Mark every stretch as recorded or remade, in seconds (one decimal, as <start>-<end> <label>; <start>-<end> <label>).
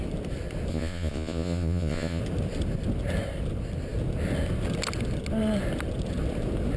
0.0-0.7 recorded; 0.7-2.2 remade; 2.2-6.8 recorded